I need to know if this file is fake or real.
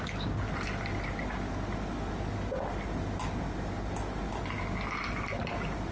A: real